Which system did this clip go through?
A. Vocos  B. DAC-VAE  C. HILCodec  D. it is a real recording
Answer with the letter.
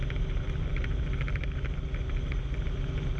D